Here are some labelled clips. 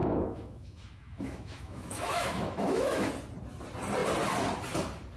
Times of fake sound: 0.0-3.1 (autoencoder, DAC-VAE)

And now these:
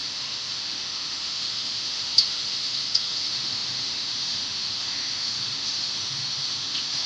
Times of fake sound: 0.0-7.1 (autoencoder, DAC-VAE)